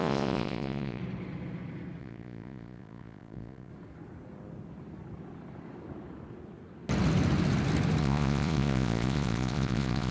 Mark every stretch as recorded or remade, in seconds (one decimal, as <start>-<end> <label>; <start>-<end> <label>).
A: 0.0-1.0 remade; 1.0-2.0 recorded; 2.0-3.7 remade; 3.7-8.0 recorded; 8.0-10.1 remade